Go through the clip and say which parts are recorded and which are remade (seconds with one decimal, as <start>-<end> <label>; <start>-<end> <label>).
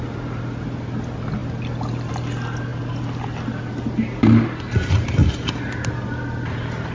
0.0-1.4 recorded; 1.4-2.1 remade; 2.1-5.2 recorded; 5.2-5.9 remade; 5.9-6.9 recorded